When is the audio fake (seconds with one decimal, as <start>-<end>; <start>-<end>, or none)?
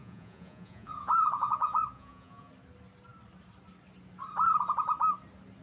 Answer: 0.0-2.5